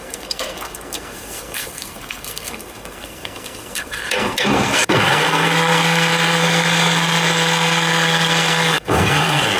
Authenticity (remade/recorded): remade